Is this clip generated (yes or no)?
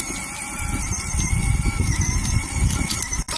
no